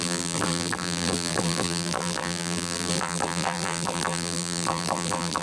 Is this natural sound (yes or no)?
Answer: no